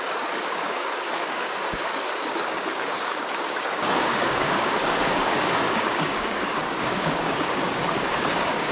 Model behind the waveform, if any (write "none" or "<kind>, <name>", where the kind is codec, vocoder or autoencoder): codec, DAC